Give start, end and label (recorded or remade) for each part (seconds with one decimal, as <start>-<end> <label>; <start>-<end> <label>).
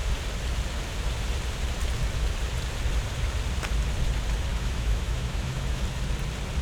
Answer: 0.0-4.5 recorded; 4.5-5.8 remade; 5.8-6.6 recorded